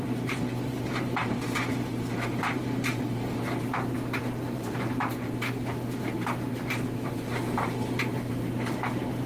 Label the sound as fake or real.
fake